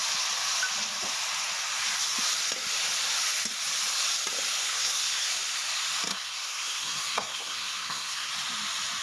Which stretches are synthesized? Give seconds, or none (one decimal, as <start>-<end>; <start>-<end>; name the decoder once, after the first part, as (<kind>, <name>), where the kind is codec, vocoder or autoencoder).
4.6-5.3 (codec, SNAC); 6.1-8.3